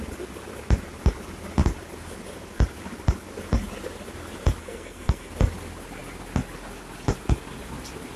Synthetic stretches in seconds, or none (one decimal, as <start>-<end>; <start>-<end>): 4.6-5.3